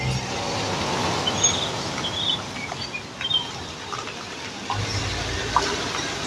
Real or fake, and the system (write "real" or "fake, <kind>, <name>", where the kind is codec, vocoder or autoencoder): real